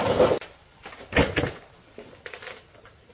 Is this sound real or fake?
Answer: real